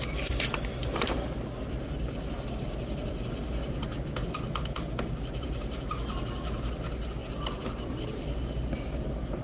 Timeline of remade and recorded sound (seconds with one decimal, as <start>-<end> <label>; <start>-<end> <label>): 0.0-9.4 recorded